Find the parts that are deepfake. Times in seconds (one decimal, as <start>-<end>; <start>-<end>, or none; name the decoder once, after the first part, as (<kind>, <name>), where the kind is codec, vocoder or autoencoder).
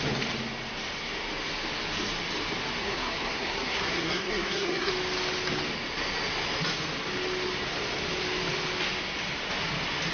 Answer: 2.8-4.9 (codec, SNAC)